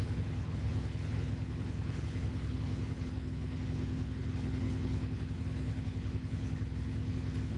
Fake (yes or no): yes